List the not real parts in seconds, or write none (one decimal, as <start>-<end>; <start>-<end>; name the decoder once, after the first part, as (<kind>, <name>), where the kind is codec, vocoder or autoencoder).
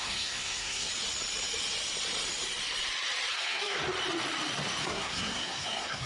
0.0-0.9 (codec, SNAC); 3.3-3.8; 4.8-6.1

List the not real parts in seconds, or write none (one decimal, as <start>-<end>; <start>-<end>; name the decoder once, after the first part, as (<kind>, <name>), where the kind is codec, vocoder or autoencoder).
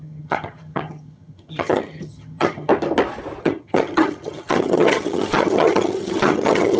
0.0-2.7 (vocoder, HiFi-GAN); 3.4-6.8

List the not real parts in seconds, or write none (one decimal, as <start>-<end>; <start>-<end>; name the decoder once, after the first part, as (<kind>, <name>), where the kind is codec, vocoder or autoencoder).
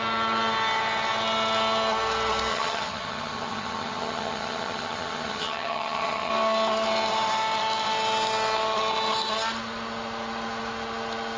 2.5-6.3 (vocoder, HiFi-GAN)